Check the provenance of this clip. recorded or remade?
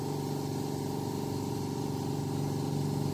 recorded